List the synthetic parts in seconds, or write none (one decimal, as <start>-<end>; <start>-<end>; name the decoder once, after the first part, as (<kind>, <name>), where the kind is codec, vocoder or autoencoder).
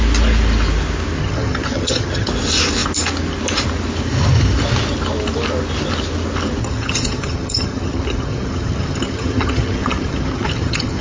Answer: 1.2-2.3 (vocoder, HiFi-GAN); 6.6-11.0